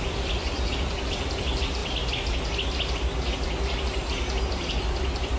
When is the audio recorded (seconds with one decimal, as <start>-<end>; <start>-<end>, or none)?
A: 1.8-4.4